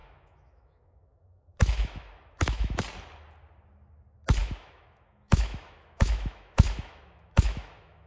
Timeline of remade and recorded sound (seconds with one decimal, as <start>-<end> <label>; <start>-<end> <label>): 0.0-2.8 remade; 2.8-4.4 recorded; 4.4-8.1 remade